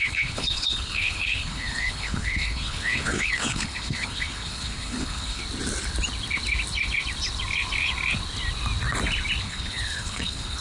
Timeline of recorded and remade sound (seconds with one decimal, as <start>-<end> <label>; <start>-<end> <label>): 0.0-5.4 remade; 5.4-9.4 recorded; 9.4-10.6 remade